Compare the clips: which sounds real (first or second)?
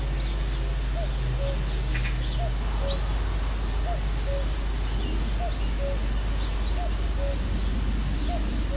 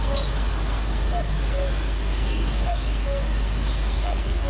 first